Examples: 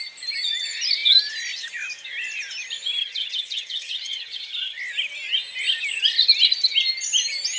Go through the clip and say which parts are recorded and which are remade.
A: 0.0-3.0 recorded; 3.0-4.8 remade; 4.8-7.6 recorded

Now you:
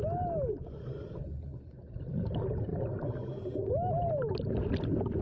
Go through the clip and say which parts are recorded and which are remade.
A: 0.0-5.2 recorded

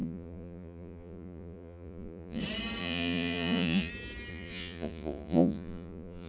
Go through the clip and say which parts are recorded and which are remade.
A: 0.0-2.4 remade; 2.4-2.8 recorded; 2.8-3.9 remade; 3.9-4.3 recorded; 4.3-6.3 remade